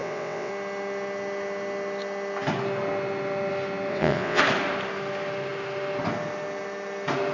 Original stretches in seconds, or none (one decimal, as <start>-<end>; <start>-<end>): 0.5-3.9; 4.4-7.3